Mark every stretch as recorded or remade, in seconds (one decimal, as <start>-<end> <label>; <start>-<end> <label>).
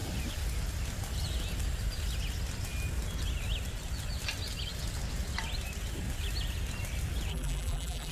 0.0-7.3 recorded; 7.3-8.1 remade